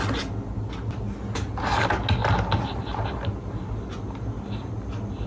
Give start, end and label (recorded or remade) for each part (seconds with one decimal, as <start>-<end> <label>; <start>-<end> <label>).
0.0-5.3 recorded